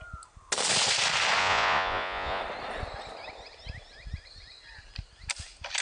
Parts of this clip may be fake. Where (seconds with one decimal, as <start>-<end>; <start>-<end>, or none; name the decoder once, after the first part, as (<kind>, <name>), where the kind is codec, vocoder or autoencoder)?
1.4-2.4 (vocoder, Vocos)